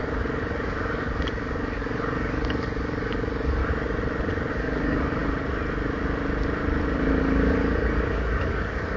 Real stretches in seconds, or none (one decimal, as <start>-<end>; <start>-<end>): 3.6-4.5; 5.2-7.2